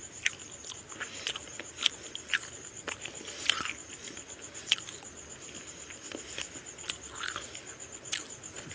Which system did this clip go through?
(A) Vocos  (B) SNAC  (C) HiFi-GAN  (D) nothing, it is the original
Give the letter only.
D